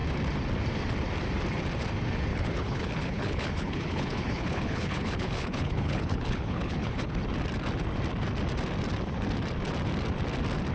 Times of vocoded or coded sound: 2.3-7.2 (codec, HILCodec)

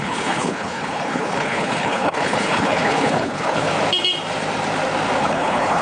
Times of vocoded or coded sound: 0.0-3.7 (codec, HILCodec); 5.2-5.8

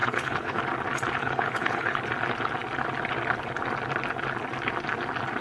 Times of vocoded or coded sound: 0.0-0.6 (codec, HILCodec); 1.2-2.0

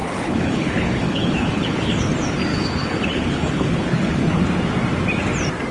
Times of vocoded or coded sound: 0.0-2.1 (codec, HILCodec); 2.5-4.4

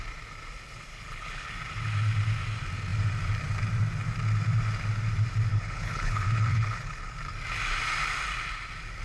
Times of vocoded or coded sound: 0.9-1.5 (codec, HILCodec); 5.5-7.2

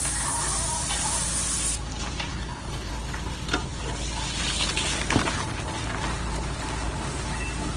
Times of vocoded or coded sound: 2.3-2.9 (codec, HILCodec)